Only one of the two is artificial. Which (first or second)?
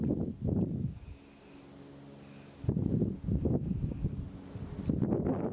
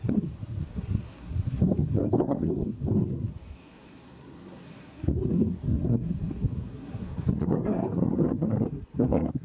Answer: second